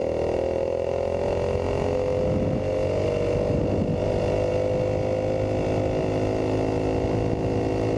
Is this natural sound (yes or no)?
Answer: yes